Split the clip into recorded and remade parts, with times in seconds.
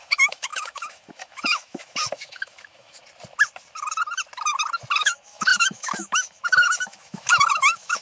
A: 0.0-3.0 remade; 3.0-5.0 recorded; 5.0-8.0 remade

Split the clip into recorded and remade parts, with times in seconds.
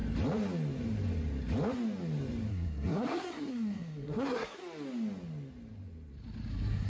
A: 0.0-2.5 recorded; 2.5-4.6 remade; 4.6-6.5 recorded; 6.5-6.9 remade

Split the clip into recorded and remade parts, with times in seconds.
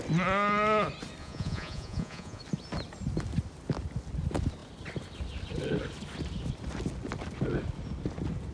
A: 0.0-1.2 recorded; 1.2-2.4 remade; 2.4-8.5 recorded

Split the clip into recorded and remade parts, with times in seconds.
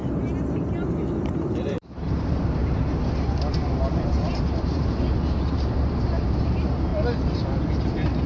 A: 0.0-1.4 recorded; 1.4-2.6 remade; 2.6-3.7 recorded; 3.7-6.9 remade; 6.9-7.8 recorded; 7.8-8.3 remade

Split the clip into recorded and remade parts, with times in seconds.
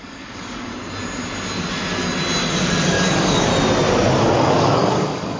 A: 0.0-0.7 remade; 0.7-2.5 recorded; 2.5-3.5 remade; 3.5-4.2 recorded; 4.2-5.4 remade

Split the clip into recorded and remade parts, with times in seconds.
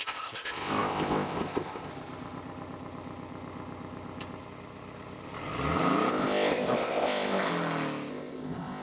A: 0.0-1.9 remade; 1.9-6.1 recorded; 6.1-7.5 remade; 7.5-8.1 recorded; 8.1-8.8 remade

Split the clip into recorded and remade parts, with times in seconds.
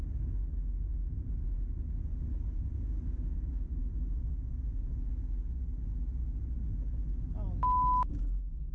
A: 0.0-8.7 recorded